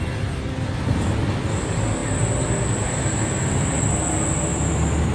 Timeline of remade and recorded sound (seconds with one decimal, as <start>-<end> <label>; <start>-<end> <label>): 0.0-5.1 recorded

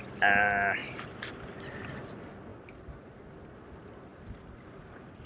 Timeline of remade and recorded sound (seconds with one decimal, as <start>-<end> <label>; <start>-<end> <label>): 0.0-0.8 recorded; 0.8-1.8 remade; 1.8-2.5 recorded; 2.5-3.2 remade; 3.2-4.1 recorded; 4.1-4.8 remade; 4.8-5.3 recorded

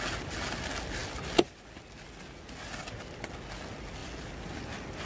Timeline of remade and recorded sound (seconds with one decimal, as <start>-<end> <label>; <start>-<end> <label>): 0.0-5.1 recorded